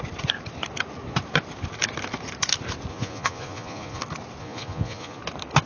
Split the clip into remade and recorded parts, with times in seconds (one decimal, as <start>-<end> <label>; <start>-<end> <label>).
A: 0.0-2.9 recorded; 2.9-4.0 remade; 4.0-4.4 recorded; 4.4-5.2 remade; 5.2-5.7 recorded